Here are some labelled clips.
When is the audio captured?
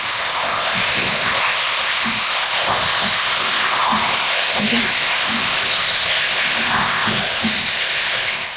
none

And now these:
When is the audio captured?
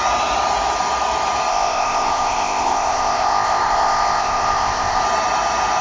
0.0-1.5; 5.0-5.8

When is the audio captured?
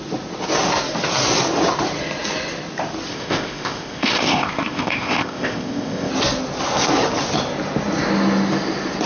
0.0-3.1; 6.1-9.1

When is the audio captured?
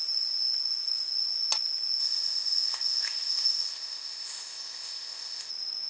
0.0-2.0; 5.5-5.9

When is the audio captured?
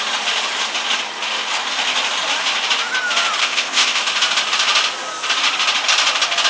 0.0-3.4; 4.0-6.5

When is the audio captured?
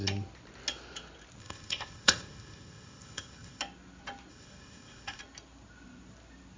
0.0-1.4; 3.6-4.3; 5.2-6.6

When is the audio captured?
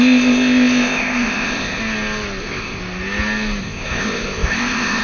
1.8-2.4; 2.8-3.6